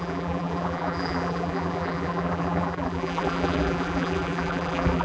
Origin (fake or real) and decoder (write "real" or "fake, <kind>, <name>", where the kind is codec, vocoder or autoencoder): fake, vocoder, BigVGAN v2